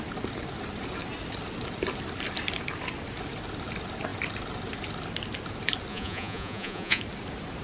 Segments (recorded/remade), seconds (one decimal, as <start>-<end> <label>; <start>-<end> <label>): 0.0-5.9 recorded; 5.9-7.0 remade; 7.0-7.6 recorded